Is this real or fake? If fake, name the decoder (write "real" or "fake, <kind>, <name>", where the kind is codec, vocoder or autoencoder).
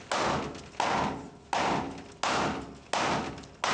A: real